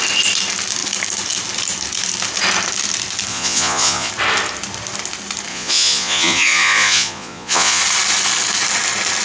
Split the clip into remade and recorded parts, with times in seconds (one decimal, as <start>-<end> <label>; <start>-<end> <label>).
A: 0.0-3.3 recorded; 3.3-4.1 remade; 4.1-5.5 recorded; 5.5-7.8 remade; 7.8-9.2 recorded